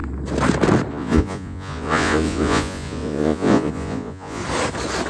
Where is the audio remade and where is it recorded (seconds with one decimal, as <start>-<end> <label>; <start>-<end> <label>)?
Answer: 0.0-0.9 recorded; 0.9-4.4 remade; 4.4-5.1 recorded